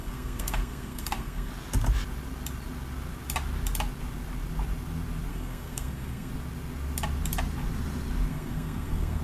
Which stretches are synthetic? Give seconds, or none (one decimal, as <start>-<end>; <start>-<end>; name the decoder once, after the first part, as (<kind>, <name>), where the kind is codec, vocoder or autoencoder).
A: 0.0-1.5 (codec, SNAC); 5.3-6.3; 8.3-9.2